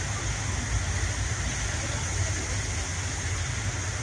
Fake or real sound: real